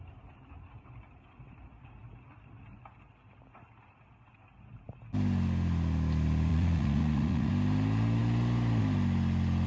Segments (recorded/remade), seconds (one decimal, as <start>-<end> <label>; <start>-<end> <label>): 0.0-6.5 recorded; 6.5-7.5 remade; 7.5-9.7 recorded